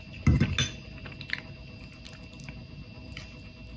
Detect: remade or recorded recorded